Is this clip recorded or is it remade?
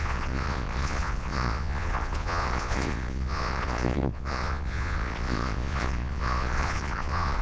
remade